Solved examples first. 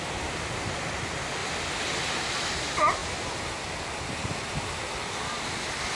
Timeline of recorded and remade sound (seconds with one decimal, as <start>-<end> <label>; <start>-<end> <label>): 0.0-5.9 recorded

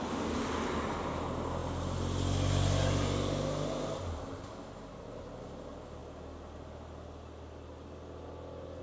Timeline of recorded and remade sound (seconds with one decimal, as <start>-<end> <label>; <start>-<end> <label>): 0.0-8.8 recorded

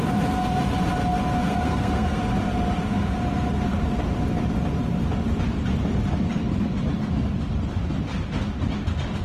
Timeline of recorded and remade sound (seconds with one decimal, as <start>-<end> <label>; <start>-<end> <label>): 0.0-1.4 recorded; 1.4-2.2 remade; 2.2-9.2 recorded

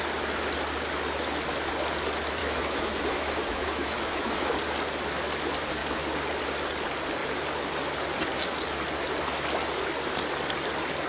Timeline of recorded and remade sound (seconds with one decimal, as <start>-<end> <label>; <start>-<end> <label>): 0.0-2.4 recorded; 2.4-4.5 remade; 4.5-11.1 recorded

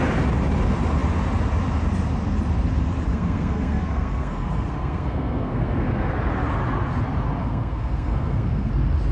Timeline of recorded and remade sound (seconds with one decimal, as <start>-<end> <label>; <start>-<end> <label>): 0.0-3.1 recorded; 3.1-6.1 remade; 6.1-7.4 recorded; 7.4-8.7 remade; 8.7-9.1 recorded

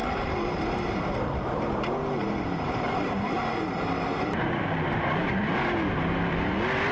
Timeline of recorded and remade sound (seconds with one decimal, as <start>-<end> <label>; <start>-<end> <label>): 0.0-1.1 remade; 1.1-2.2 recorded; 2.2-6.3 remade; 6.3-6.9 recorded